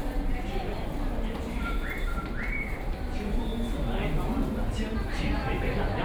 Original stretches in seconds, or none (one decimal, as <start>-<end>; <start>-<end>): 3.5-6.0